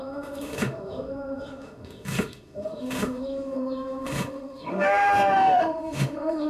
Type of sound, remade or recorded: remade